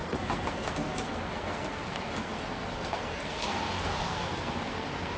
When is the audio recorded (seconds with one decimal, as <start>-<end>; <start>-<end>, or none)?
none